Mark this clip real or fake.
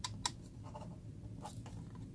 real